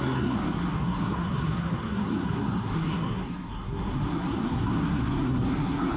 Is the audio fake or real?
fake